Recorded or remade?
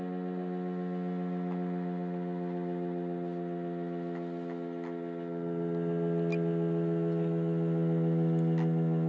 recorded